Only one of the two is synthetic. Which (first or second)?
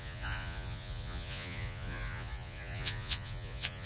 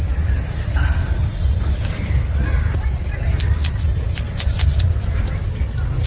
first